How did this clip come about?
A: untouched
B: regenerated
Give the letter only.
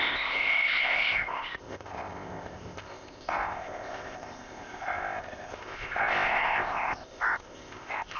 B